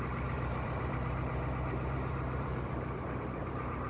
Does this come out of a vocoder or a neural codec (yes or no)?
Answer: yes